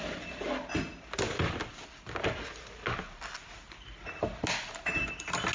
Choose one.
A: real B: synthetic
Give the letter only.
A